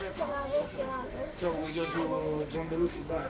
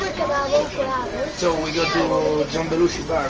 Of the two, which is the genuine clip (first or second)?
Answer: second